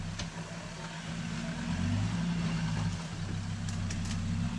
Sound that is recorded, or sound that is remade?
recorded